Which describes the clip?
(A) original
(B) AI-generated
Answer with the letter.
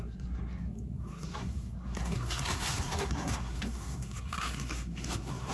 B